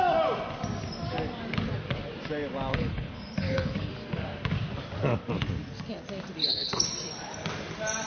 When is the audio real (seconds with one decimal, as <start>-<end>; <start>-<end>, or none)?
0.0-2.7; 3.9-6.4; 6.9-8.1